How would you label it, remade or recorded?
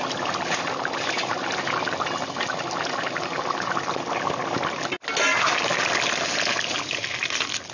recorded